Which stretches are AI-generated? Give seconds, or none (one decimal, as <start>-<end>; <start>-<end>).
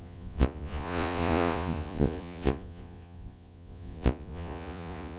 0.0-5.2